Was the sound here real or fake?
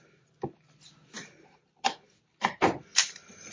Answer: real